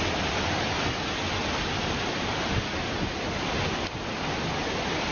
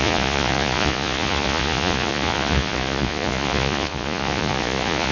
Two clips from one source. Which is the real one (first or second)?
first